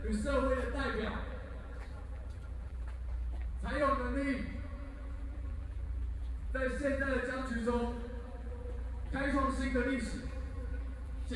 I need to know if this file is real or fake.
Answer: fake